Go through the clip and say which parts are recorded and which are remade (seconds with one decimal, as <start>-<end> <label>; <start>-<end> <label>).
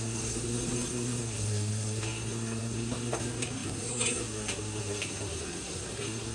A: 0.0-6.3 remade